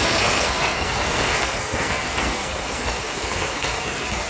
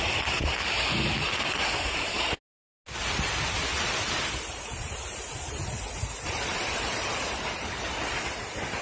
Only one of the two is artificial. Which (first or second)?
first